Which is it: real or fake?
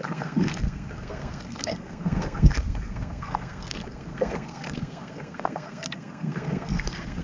fake